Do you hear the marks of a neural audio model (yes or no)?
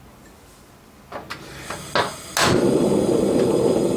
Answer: no